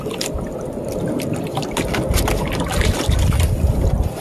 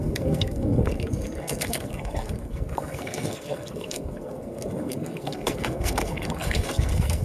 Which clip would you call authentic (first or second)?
first